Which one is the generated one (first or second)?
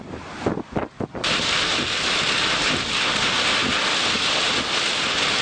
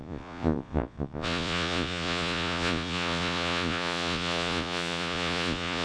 second